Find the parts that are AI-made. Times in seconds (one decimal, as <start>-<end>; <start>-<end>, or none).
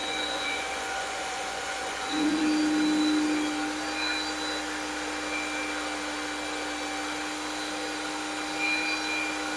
0.0-2.4